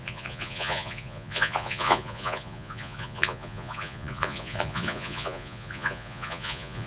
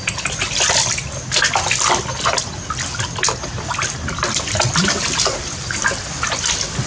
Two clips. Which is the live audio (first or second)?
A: second